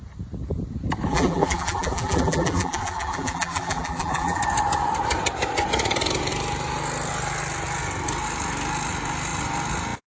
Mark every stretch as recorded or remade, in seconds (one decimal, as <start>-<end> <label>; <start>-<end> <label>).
0.0-1.1 recorded; 1.1-4.4 remade; 4.4-10.2 recorded